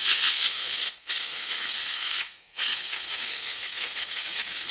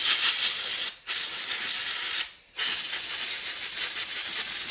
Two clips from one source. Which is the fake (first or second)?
first